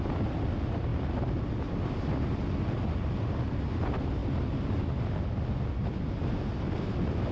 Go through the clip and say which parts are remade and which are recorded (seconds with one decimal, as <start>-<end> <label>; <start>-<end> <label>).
0.0-7.3 recorded